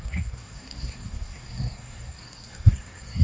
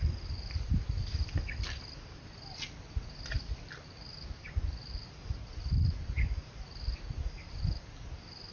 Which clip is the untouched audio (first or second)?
second